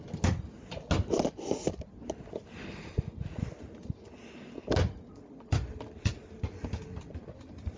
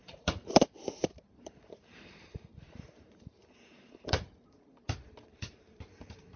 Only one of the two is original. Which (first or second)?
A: first